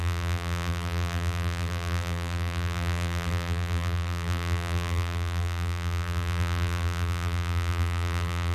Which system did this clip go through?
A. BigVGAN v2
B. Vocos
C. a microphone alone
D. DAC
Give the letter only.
A